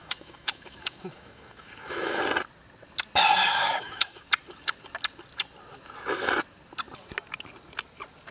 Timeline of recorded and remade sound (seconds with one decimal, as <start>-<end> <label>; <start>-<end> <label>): 0.0-2.2 remade; 2.2-3.4 recorded; 3.4-4.3 remade; 4.3-8.3 recorded